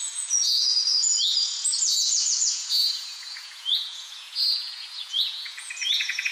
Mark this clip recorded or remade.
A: remade